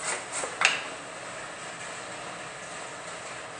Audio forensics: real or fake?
real